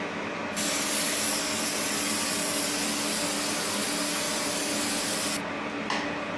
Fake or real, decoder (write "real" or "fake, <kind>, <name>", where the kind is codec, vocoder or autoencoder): real